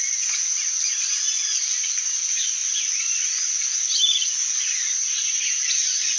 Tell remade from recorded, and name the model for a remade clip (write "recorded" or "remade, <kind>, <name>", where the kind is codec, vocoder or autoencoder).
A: recorded